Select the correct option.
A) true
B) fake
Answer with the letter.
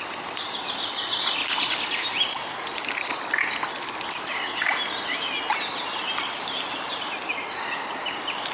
A